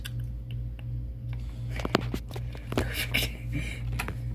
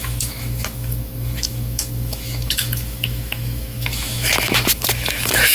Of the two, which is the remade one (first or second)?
second